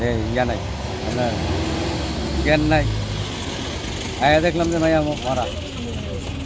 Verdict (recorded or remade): recorded